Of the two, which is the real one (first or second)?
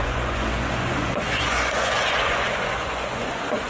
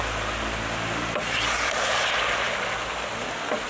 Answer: second